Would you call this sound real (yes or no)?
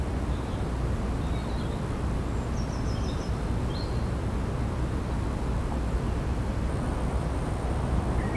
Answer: yes